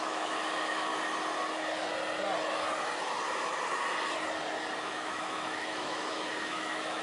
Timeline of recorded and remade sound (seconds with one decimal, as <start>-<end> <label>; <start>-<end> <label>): 0.0-0.9 remade; 0.9-4.8 recorded; 4.8-7.0 remade